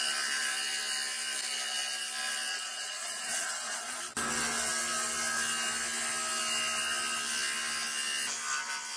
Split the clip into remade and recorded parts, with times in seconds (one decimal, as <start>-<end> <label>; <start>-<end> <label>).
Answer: 0.0-2.5 recorded; 2.5-4.0 remade; 4.0-9.0 recorded